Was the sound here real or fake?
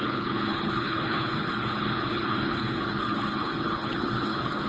fake